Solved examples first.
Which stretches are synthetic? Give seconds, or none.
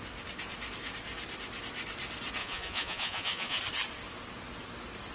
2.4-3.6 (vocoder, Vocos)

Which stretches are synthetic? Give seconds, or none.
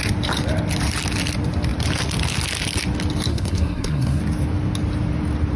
3.3-4.2 (codec, SNAC)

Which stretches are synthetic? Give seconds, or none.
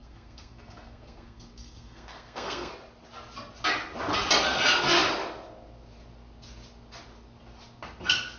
0.0-2.7 (codec, SNAC)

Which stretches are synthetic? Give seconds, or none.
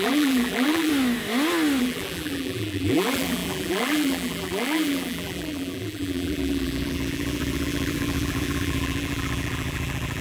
0.0-0.9 (vocoder, BigVGAN v2); 1.8-10.2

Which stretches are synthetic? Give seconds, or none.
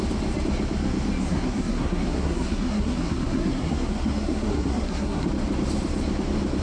1.3-5.3 (codec, SNAC)